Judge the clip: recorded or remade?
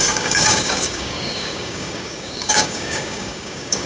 remade